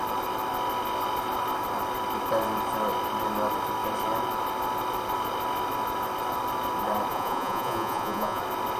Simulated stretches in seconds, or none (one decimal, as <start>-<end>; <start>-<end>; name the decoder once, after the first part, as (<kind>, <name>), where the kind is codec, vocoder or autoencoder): 7.1-8.4 (vocoder, Vocos)